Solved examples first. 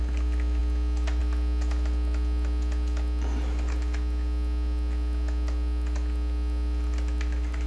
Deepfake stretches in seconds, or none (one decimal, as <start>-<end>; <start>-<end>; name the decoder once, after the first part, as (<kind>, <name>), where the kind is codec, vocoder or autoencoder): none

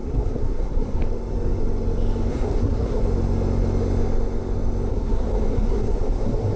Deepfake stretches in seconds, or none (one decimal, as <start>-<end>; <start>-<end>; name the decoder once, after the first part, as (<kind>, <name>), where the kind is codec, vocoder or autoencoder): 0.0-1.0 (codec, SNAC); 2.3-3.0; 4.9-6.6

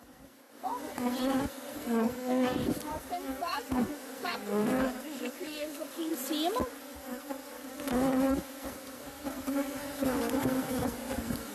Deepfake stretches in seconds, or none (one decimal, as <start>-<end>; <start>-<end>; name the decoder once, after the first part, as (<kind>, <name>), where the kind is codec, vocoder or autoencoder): 0.0-6.1 (codec, SNAC); 6.8-11.5

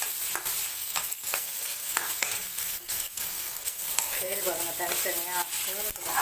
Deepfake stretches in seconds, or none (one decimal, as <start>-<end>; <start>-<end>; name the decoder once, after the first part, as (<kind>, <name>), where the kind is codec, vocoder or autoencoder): 0.7-4.4 (codec, SNAC)

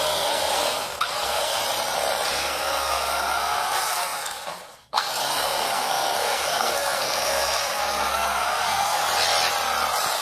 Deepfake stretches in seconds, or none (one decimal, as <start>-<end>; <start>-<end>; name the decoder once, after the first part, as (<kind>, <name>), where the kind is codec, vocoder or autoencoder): 0.0-1.6 (codec, SNAC); 2.3-9.0